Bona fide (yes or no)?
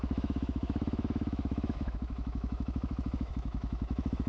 no